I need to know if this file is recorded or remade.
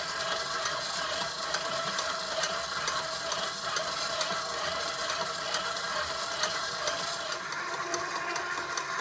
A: recorded